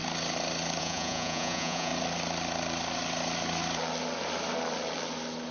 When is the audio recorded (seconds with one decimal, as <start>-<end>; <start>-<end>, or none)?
0.0-0.8; 1.9-5.5